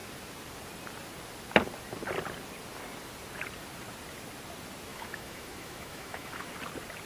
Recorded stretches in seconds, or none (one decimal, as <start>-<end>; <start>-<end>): 0.0-4.9; 6.5-7.1